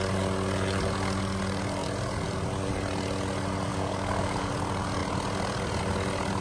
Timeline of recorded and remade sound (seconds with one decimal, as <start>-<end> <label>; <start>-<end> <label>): 0.0-3.7 recorded; 3.7-4.5 remade; 4.5-6.4 recorded